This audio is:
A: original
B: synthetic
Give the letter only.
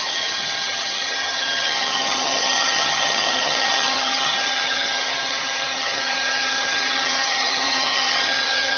B